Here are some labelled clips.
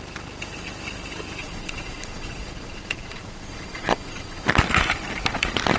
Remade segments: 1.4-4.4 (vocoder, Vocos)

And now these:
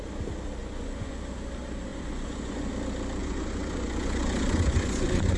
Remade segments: 0.6-1.2 (vocoder, Vocos); 1.9-2.7; 3.2-5.4

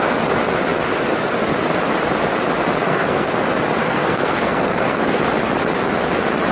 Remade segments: 2.8-3.3 (codec, SNAC); 3.8-5.2

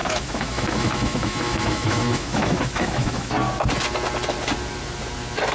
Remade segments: 0.0-3.3 (autoencoder, DAC-VAE)

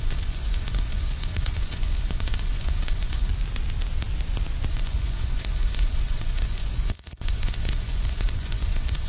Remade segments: 0.0-3.3 (vocoder, Vocos); 4.7-9.1

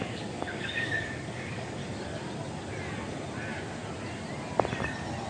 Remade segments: 0.0-1.8 (codec, DAC)

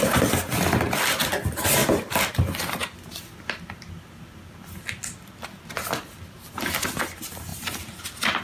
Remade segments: 7.5-8.0 (vocoder, BigVGAN v2)